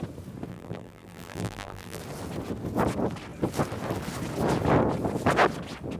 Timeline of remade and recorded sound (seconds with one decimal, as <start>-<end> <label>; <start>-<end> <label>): 0.0-0.5 recorded; 0.5-2.0 remade; 2.0-6.0 recorded